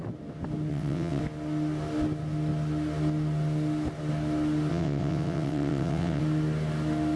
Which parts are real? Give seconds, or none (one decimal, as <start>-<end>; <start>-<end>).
0.0-0.7; 1.2-4.7; 6.2-7.2